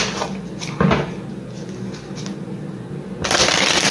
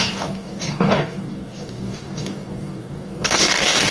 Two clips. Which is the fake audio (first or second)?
second